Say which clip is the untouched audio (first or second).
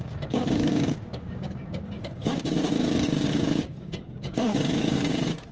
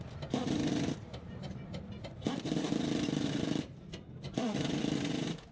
second